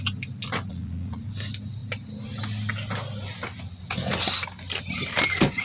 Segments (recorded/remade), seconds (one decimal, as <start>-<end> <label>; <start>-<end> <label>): 0.0-0.7 recorded; 0.7-1.3 remade; 1.3-5.6 recorded